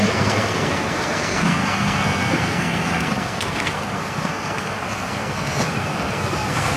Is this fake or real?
fake